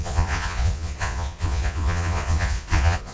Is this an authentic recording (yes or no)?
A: no